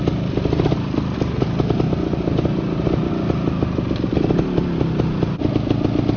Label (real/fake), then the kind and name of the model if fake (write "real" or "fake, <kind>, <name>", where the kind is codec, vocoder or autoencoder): real